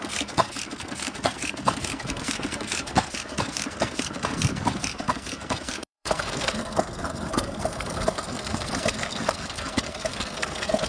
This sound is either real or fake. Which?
fake